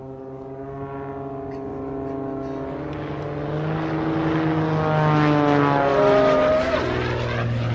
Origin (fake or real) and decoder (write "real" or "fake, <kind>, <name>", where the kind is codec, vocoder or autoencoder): real